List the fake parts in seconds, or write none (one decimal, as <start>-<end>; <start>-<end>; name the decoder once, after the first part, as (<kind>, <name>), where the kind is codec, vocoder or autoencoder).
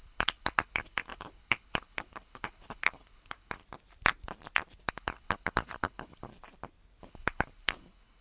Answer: 0.0-3.6 (codec, HILCodec); 4.9-6.3; 7.0-8.2